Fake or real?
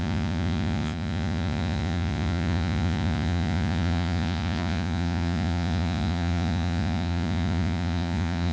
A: fake